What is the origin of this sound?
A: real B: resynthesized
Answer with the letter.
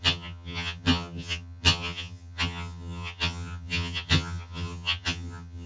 B